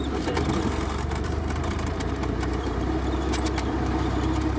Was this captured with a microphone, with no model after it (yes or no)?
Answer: no